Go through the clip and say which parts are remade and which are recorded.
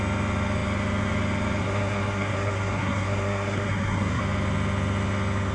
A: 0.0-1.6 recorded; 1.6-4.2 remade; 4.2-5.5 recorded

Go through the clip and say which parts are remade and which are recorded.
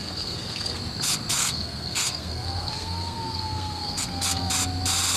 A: 0.0-0.8 remade; 0.8-1.4 recorded; 1.4-4.5 remade; 4.5-5.2 recorded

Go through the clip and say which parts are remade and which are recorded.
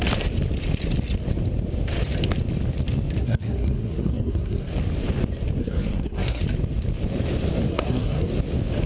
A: 0.0-3.2 recorded; 3.2-4.7 remade; 4.7-5.6 recorded; 5.6-6.4 remade; 6.4-7.7 recorded; 7.7-8.3 remade; 8.3-8.9 recorded